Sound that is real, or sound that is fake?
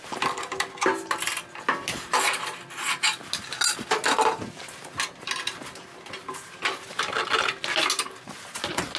real